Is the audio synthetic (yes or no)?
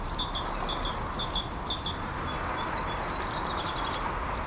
no